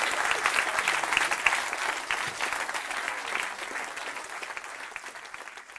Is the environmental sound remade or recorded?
recorded